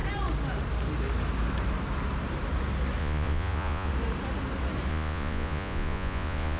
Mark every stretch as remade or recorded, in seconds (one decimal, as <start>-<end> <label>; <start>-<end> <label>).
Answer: 0.0-3.0 recorded; 3.0-3.9 remade; 3.9-4.9 recorded; 4.9-6.6 remade